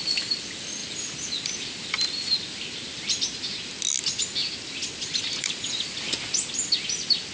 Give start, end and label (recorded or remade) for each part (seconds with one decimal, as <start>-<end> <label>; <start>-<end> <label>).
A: 0.0-7.3 recorded

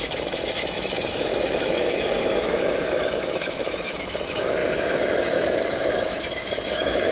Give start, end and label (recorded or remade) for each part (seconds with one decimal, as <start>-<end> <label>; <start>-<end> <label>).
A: 0.0-7.1 remade

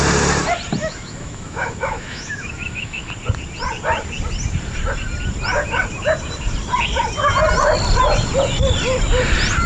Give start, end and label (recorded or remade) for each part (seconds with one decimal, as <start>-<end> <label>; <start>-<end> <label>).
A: 0.0-0.8 recorded; 0.8-3.1 remade; 3.1-9.7 recorded

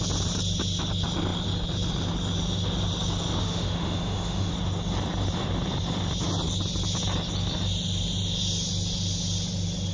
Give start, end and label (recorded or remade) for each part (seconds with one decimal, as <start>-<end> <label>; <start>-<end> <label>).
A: 0.0-3.4 recorded; 3.4-4.5 remade; 4.5-9.9 recorded

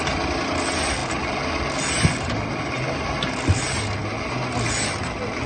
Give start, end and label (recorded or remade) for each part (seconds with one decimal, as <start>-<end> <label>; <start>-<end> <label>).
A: 0.0-5.5 recorded